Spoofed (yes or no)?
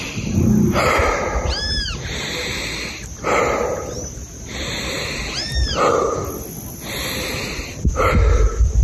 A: no